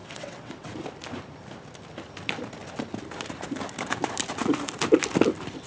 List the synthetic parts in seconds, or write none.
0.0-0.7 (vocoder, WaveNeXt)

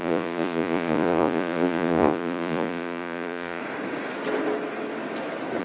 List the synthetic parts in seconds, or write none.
0.0-3.6 (vocoder, Vocos)

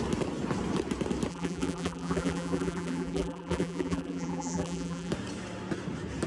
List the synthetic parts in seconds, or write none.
1.3-5.1 (vocoder, BigVGAN v2)

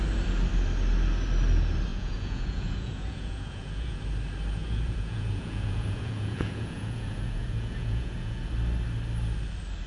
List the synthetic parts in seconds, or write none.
1.9-4.0 (vocoder, Vocos); 4.6-8.5

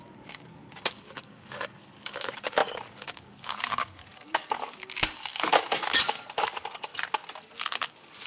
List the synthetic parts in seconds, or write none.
0.0-6.9 (codec, DAC); 7.9-8.3

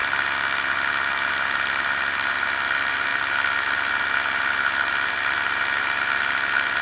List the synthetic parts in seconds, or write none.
none